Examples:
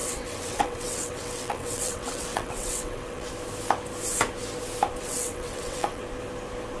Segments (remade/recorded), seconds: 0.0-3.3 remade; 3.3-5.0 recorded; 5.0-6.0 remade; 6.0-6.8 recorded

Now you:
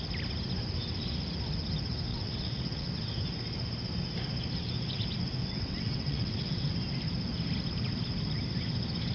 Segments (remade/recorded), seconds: 0.0-2.1 recorded; 2.1-2.9 remade; 2.9-5.4 recorded; 5.4-6.7 remade; 6.7-9.1 recorded

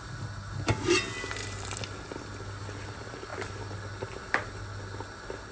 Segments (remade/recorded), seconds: 0.0-5.5 recorded

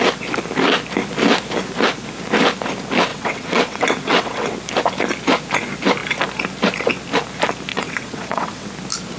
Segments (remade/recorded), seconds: 0.0-3.1 recorded; 3.1-4.5 remade; 4.5-7.7 recorded; 7.7-8.7 remade; 8.7-9.2 recorded